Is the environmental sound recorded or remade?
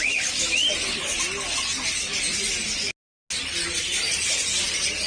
recorded